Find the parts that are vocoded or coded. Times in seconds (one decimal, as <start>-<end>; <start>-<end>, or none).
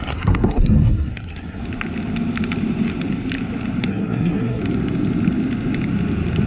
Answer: 0.0-1.6; 3.8-4.6